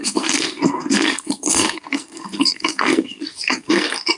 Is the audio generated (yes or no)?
yes